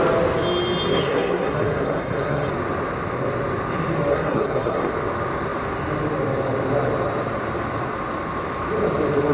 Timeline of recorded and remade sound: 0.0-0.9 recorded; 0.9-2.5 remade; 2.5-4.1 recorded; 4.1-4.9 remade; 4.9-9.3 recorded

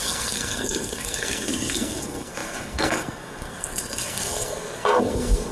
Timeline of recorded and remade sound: 0.0-5.5 remade

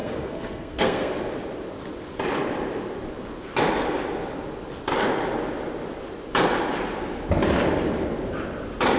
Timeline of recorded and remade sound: 0.0-1.1 remade; 1.1-9.0 recorded

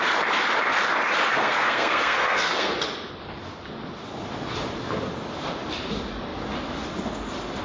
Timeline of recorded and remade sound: 0.0-1.3 recorded; 1.3-2.7 remade; 2.7-7.6 recorded